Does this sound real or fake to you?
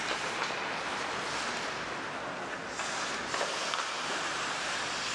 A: real